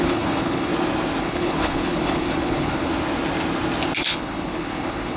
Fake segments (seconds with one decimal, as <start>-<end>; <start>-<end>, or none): 0.0-0.7; 1.2-2.9; 4.0-5.2

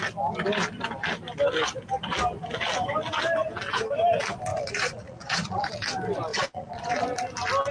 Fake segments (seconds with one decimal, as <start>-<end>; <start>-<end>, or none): 4.5-5.7; 6.3-7.0